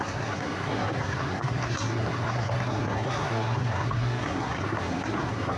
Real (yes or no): no